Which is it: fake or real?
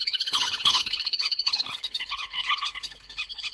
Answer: fake